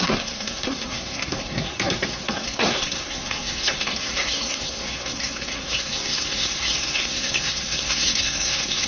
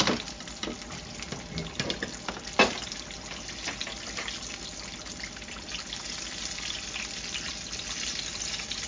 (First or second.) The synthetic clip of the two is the first